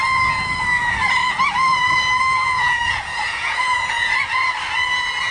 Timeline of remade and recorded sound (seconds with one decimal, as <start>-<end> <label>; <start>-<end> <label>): 0.0-1.2 recorded; 1.2-4.4 remade; 4.4-5.3 recorded